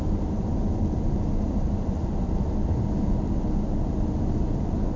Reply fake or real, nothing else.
real